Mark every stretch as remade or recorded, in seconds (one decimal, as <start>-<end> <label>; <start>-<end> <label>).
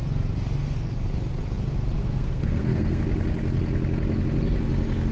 0.0-2.0 recorded; 2.0-3.0 remade; 3.0-5.1 recorded